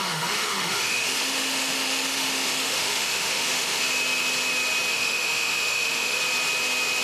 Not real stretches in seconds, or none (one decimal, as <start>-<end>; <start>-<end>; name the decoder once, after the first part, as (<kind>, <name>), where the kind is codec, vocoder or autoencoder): 0.0-3.8 (autoencoder, DAC-VAE); 4.9-6.2